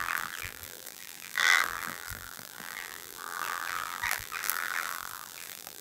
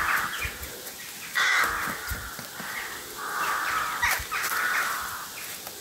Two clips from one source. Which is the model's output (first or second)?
first